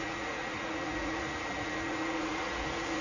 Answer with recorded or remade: remade